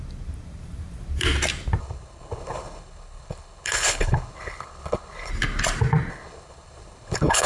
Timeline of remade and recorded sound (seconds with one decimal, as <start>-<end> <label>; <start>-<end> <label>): 0.0-1.8 recorded; 1.8-5.3 remade; 5.3-6.1 recorded; 6.1-7.5 remade